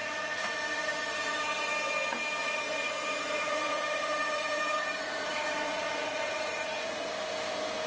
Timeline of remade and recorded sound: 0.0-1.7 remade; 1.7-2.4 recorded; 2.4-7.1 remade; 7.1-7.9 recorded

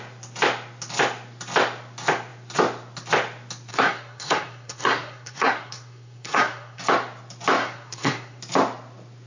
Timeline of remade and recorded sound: 0.0-3.7 recorded; 3.7-6.8 remade; 6.8-7.6 recorded; 7.6-8.4 remade; 8.4-9.3 recorded

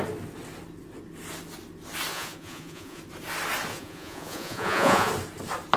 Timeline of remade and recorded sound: 0.0-2.1 recorded; 2.1-3.0 remade; 3.0-3.7 recorded; 3.7-5.1 remade; 5.1-5.8 recorded